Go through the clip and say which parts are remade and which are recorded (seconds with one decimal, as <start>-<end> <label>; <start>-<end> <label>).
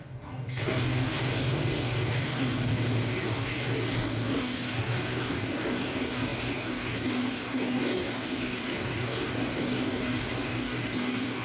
0.0-11.4 remade